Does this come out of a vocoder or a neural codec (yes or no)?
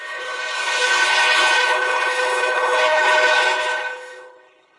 yes